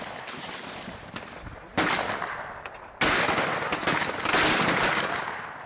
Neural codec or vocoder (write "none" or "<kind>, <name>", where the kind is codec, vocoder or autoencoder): none